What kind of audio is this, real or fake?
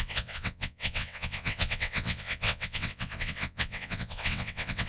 fake